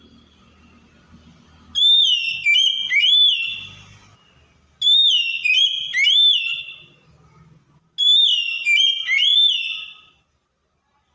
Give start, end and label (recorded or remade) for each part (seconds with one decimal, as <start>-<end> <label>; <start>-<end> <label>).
0.0-11.1 recorded